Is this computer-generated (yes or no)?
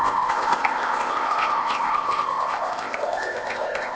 yes